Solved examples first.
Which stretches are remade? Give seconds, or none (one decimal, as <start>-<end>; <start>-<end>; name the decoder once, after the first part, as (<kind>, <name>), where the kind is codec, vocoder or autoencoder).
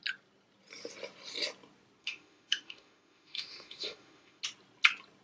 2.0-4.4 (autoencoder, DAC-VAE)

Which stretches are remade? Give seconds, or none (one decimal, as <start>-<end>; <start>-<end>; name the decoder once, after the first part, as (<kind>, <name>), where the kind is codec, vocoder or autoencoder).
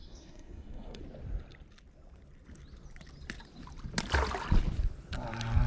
0.0-1.0 (codec, SNAC)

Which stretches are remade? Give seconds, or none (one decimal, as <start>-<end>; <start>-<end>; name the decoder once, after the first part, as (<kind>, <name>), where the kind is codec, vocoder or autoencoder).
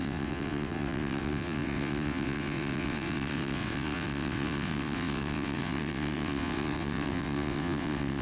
0.0-8.2 (vocoder, WaveNeXt)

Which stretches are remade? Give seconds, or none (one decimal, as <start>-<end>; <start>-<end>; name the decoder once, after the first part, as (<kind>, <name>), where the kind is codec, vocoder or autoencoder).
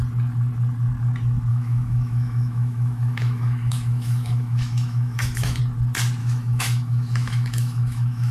1.5-5.6 (autoencoder, DAC-VAE); 6.2-8.3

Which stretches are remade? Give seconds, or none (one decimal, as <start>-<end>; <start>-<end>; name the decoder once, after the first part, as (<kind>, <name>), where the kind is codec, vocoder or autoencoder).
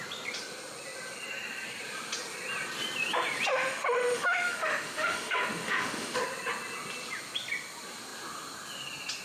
3.5-6.2 (autoencoder, DAC-VAE)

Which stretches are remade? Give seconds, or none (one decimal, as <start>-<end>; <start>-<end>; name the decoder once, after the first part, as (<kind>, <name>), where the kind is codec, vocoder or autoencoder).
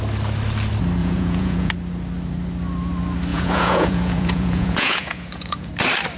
1.0-1.7 (vocoder, Vocos); 3.3-5.7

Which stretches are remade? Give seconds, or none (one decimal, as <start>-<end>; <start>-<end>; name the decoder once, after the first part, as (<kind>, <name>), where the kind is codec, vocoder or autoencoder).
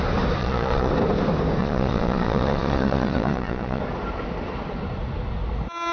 0.4-0.9 (vocoder, Vocos); 1.6-3.8